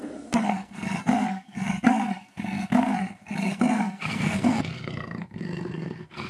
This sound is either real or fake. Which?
fake